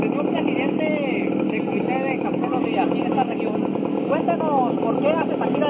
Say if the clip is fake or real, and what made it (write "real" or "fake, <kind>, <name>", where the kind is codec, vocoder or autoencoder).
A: real